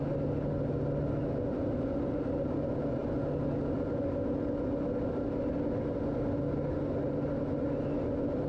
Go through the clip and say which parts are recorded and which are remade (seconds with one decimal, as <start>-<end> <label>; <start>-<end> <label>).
0.0-8.5 recorded